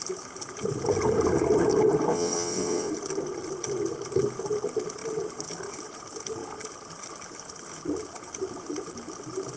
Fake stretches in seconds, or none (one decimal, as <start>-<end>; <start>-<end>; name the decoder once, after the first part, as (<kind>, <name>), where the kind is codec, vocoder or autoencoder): 2.1-2.9 (vocoder, WaveNeXt)